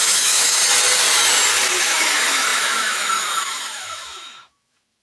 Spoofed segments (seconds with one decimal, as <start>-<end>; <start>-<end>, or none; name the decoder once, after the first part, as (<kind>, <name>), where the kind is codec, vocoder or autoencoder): 0.0-0.6 (autoencoder, DAC-VAE); 1.8-5.0